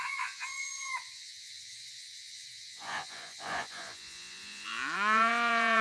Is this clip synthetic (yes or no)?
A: yes